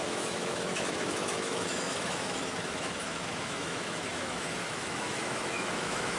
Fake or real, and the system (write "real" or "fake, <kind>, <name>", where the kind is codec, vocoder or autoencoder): fake, autoencoder, DAC-VAE